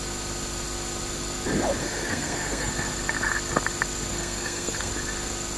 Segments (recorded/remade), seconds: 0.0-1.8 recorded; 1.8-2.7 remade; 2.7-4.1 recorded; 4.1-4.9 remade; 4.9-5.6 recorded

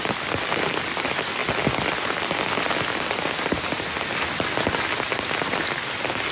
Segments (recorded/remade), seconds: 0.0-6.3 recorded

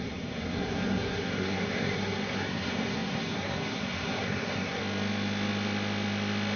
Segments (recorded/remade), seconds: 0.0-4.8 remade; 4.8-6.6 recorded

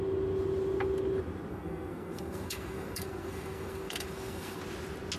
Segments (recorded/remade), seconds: 0.0-1.5 recorded; 1.5-4.6 remade; 4.6-5.2 recorded

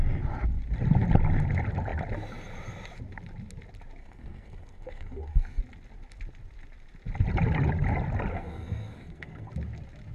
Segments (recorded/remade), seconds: 0.0-4.0 recorded; 4.0-5.6 remade; 5.6-8.3 recorded; 8.3-9.5 remade; 9.5-10.1 recorded

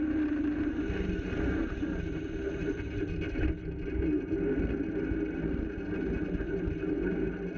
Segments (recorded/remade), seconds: 0.0-7.6 recorded